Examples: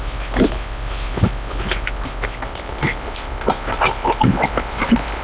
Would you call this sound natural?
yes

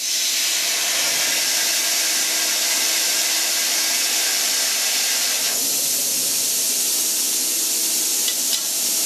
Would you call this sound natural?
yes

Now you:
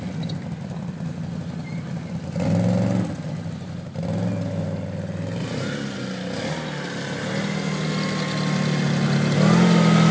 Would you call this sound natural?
yes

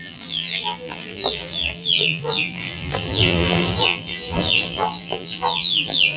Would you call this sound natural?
no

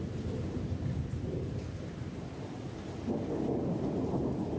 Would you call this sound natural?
yes